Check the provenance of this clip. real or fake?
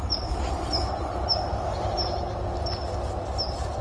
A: real